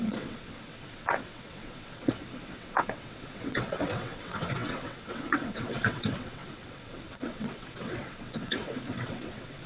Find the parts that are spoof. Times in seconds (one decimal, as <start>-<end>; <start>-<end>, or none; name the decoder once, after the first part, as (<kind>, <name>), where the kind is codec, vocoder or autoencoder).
0.0-9.7 (vocoder, WaveNeXt)